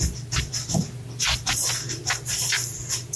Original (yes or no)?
yes